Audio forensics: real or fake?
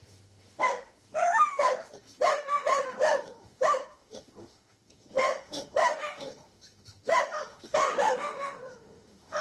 fake